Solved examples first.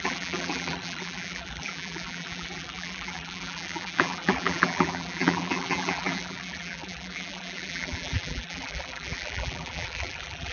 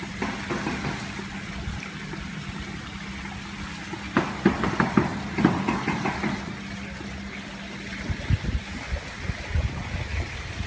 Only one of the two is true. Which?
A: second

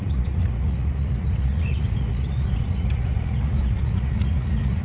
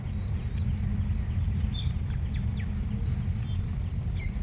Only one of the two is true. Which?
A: second